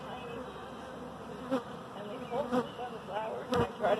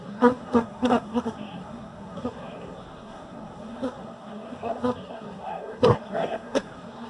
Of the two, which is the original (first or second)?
first